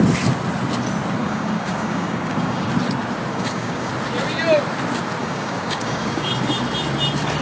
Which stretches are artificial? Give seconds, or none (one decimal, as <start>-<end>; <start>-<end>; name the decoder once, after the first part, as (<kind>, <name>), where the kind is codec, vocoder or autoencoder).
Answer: 1.2-2.7 (codec, DAC); 3.3-3.9; 5.2-6.3